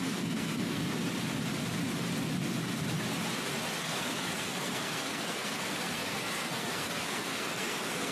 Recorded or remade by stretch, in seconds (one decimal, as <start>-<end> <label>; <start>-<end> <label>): 0.0-0.9 remade; 0.9-3.8 recorded; 3.8-8.1 remade